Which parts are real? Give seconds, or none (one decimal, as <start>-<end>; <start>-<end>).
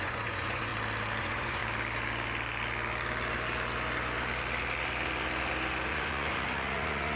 0.7-1.2; 1.6-5.9